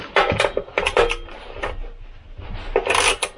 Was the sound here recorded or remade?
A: recorded